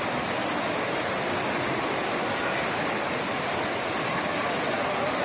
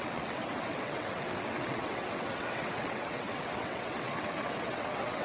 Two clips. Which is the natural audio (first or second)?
first